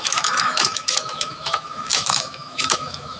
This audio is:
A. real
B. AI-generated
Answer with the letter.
B